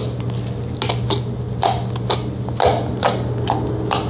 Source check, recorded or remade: recorded